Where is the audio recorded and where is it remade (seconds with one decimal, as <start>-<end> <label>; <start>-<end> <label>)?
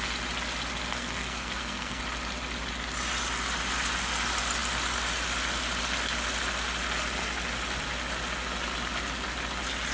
0.0-0.9 recorded; 0.9-2.0 remade; 2.0-9.9 recorded